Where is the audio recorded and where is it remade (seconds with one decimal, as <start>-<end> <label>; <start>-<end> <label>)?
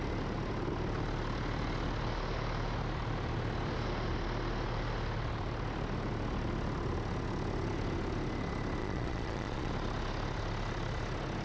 0.0-8.8 recorded; 8.8-9.7 remade; 9.7-11.4 recorded